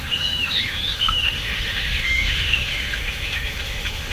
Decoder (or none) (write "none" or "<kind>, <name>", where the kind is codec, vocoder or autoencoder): autoencoder, DAC-VAE